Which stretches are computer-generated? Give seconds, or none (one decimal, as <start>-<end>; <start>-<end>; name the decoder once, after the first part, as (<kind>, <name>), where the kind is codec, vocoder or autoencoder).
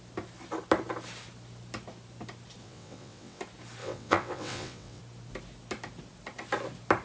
2.6-3.4 (vocoder, WaveNeXt); 3.8-5.0